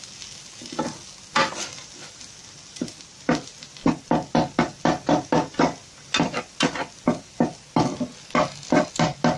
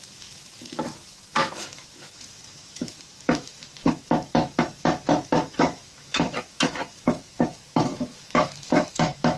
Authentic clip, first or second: first